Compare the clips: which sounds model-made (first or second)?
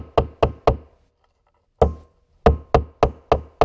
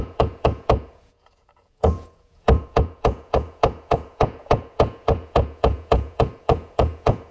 second